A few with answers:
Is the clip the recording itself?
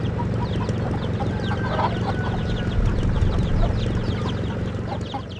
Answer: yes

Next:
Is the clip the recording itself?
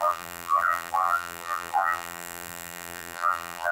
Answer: no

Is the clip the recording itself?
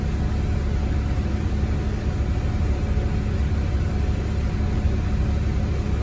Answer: yes